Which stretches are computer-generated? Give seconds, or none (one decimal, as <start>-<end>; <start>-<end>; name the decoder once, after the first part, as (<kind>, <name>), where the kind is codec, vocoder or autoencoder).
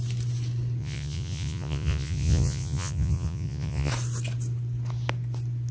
0.8-3.9 (vocoder, Vocos)